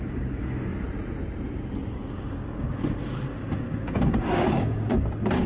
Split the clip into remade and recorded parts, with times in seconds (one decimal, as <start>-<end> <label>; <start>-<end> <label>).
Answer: 0.0-0.7 remade; 0.7-1.9 recorded; 1.9-5.5 remade